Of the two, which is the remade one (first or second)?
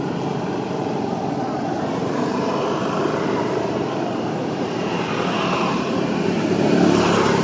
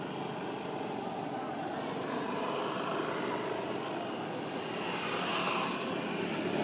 first